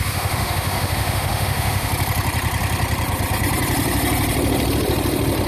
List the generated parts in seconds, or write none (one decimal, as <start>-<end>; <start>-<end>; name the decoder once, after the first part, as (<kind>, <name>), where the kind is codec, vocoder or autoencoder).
0.0-1.9 (autoencoder, DAC-VAE)